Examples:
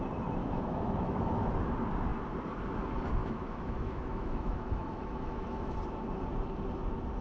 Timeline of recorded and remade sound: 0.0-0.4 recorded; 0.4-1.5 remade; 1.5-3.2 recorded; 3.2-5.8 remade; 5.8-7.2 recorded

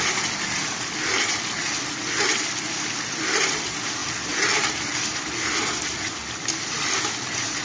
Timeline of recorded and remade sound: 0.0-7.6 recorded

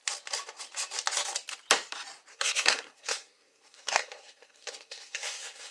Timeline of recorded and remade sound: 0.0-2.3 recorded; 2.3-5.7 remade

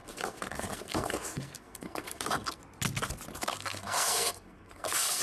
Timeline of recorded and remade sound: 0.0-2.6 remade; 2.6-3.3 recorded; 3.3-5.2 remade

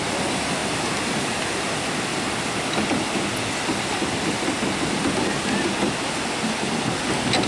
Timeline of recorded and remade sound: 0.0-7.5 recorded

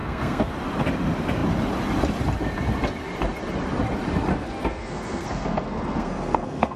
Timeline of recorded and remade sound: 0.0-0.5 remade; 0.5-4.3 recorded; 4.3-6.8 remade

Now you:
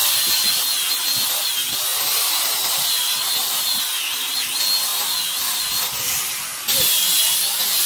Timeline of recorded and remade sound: 0.0-7.9 recorded

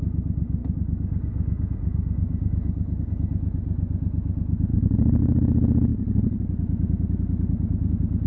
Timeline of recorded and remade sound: 0.0-0.6 recorded; 0.6-3.1 remade; 3.1-4.7 recorded; 4.7-5.2 remade; 5.2-8.3 recorded